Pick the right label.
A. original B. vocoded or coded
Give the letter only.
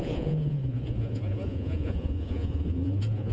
B